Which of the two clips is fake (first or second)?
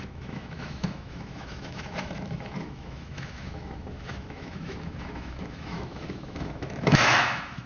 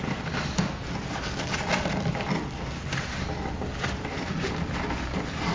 first